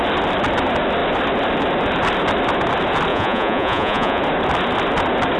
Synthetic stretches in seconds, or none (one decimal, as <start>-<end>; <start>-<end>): 3.1-4.2